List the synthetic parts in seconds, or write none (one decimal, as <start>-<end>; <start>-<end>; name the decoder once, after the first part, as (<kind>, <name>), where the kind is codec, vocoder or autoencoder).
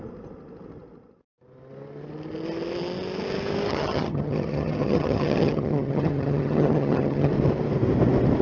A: 3.7-7.3 (vocoder, HiFi-GAN)